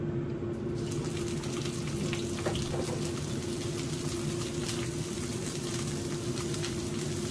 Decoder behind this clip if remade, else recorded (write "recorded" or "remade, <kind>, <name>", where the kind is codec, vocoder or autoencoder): recorded